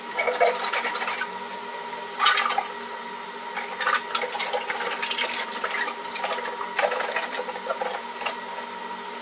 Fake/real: real